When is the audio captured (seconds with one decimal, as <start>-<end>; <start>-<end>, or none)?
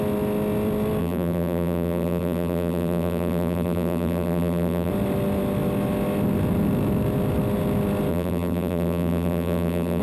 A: 0.0-1.0; 4.9-8.1